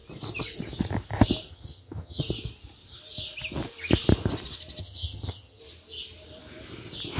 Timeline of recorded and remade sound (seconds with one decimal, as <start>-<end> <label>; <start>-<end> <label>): 0.0-1.5 recorded; 1.5-2.2 remade; 2.2-4.8 recorded; 4.8-5.6 remade; 5.6-7.2 recorded